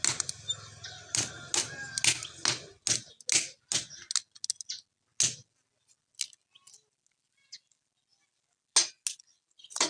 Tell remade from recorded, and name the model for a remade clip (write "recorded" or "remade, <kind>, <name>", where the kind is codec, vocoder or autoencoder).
recorded